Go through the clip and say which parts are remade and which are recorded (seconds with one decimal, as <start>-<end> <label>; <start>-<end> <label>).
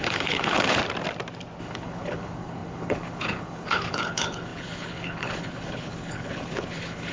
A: 0.0-0.8 remade; 0.8-1.6 recorded; 1.6-7.1 remade